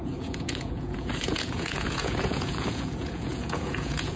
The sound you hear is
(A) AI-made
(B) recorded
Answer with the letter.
A